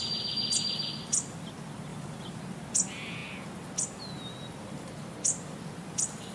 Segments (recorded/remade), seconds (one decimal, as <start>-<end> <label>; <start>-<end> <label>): 0.0-1.9 recorded; 1.9-2.4 remade; 2.4-6.3 recorded